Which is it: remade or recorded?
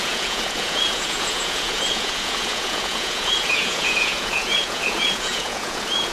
remade